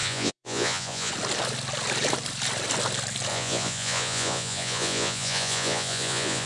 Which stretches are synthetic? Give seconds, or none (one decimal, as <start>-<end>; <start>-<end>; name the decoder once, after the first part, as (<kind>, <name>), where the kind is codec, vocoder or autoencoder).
0.0-1.1 (vocoder, Vocos); 3.3-6.5